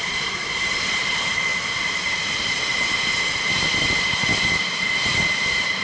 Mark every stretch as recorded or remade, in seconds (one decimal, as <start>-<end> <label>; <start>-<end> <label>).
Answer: 0.0-1.5 remade; 1.5-5.0 recorded; 5.0-5.8 remade